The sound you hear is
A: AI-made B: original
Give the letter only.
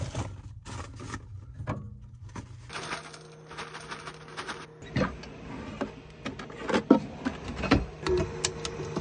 B